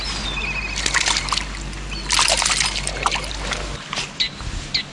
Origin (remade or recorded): recorded